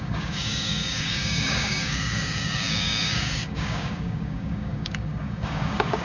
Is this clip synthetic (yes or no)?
yes